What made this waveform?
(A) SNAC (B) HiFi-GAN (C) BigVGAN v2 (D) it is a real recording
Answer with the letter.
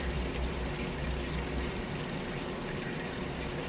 D